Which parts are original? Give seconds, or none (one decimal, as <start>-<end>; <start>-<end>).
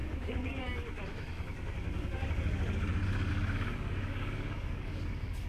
none